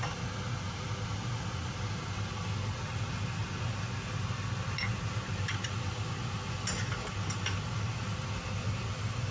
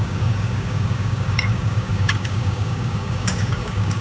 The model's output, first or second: second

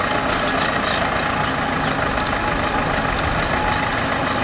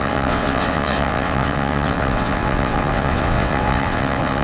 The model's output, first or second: second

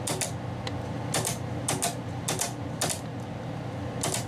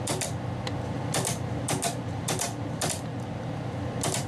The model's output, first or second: second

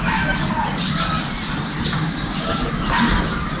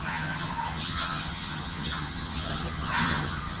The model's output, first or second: second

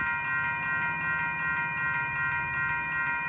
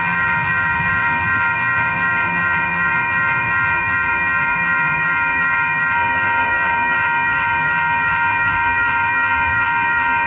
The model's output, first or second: second